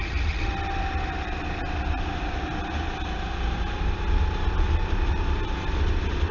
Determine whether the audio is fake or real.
real